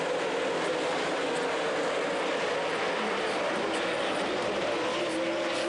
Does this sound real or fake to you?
real